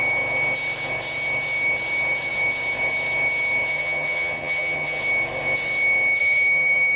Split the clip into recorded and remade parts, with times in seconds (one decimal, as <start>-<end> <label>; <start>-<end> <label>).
0.0-3.7 recorded; 3.7-5.0 remade; 5.0-6.2 recorded; 6.2-7.0 remade

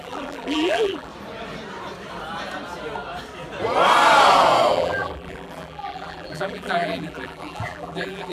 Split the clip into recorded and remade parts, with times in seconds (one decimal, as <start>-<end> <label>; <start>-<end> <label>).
0.0-1.1 remade; 1.1-4.7 recorded; 4.7-8.3 remade